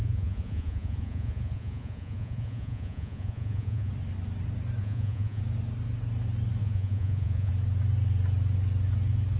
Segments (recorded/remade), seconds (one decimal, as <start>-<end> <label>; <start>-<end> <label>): 0.0-3.9 remade; 3.9-4.8 recorded; 4.8-5.4 remade; 5.4-6.6 recorded; 6.6-7.5 remade; 7.5-9.4 recorded